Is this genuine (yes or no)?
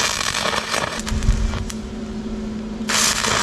yes